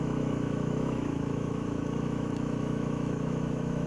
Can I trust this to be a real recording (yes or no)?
no